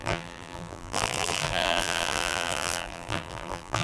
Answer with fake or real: fake